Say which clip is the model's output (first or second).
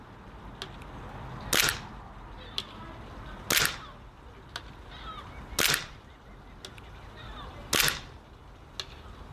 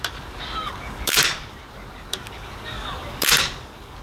second